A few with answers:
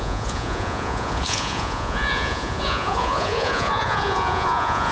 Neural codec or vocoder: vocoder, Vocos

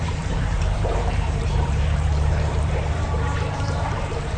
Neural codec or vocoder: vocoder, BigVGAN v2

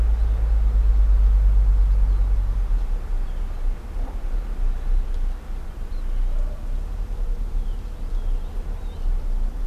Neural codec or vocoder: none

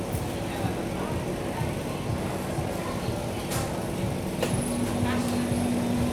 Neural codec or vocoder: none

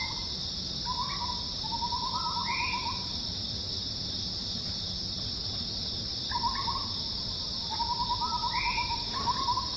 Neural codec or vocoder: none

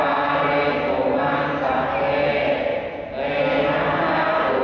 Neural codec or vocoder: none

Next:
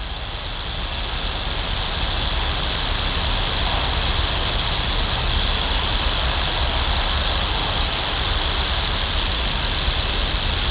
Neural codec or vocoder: none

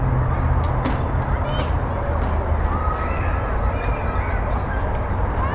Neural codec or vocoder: none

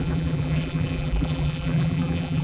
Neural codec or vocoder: vocoder, BigVGAN v2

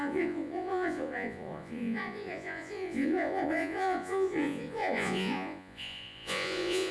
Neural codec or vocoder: vocoder, Vocos